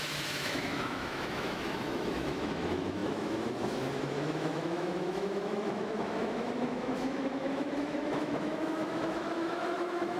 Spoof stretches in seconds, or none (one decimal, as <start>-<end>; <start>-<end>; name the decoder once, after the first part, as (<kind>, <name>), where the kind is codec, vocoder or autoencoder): 0.0-10.2 (autoencoder, DAC-VAE)